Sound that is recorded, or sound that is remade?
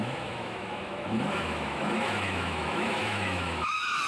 remade